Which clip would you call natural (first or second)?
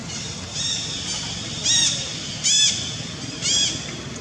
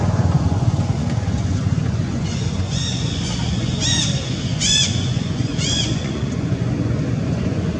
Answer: first